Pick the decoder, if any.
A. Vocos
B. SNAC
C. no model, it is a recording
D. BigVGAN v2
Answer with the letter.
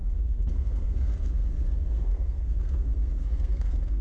B